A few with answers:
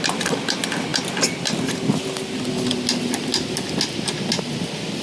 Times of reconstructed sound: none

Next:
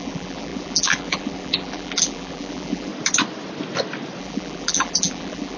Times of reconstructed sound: 0.0-2.9 (vocoder, BigVGAN v2); 4.2-5.6

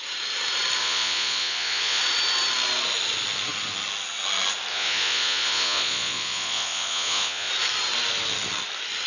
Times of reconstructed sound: 0.8-2.0 (vocoder, Vocos); 4.7-7.5

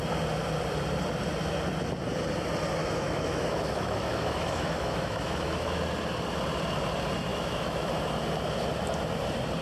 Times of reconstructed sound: 2.8-5.8 (autoencoder, DAC-VAE); 7.3-7.9

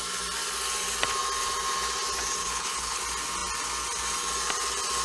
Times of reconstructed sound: 2.4-3.0 (codec, HILCodec)